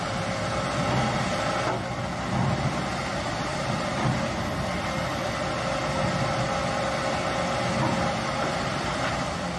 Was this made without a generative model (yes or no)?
yes